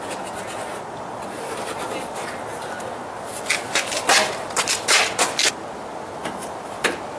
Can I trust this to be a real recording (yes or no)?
yes